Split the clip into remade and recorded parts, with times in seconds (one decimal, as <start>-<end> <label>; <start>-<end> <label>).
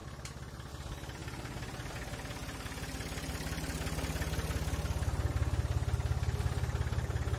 0.0-7.4 recorded